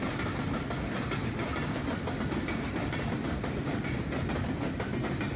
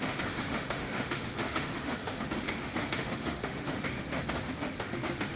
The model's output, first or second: second